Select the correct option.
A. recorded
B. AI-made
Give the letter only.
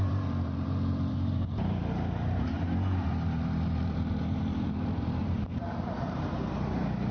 B